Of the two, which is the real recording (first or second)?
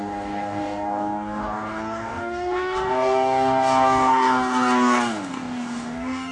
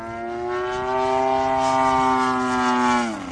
second